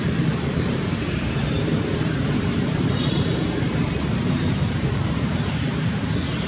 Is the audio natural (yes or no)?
no